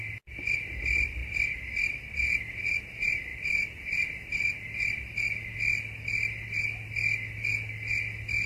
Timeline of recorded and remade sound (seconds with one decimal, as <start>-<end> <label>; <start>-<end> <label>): 0.0-3.3 recorded; 3.3-5.1 remade; 5.1-8.5 recorded